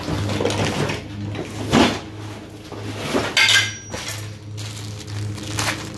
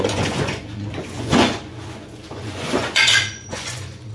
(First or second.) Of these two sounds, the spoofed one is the second